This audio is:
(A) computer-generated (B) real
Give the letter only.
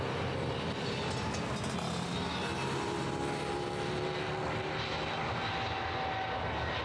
B